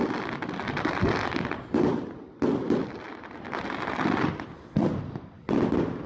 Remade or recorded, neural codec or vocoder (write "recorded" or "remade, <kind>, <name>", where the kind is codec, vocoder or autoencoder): recorded